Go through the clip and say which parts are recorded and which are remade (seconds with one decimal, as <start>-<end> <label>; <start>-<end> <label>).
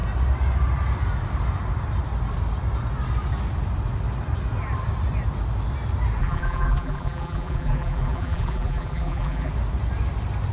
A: 0.0-6.2 recorded; 6.2-9.5 remade; 9.5-10.5 recorded